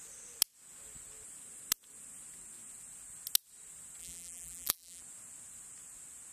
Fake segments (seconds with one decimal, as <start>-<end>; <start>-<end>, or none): 4.0-5.0